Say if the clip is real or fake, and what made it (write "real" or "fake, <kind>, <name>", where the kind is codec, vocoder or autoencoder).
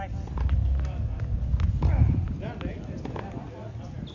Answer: real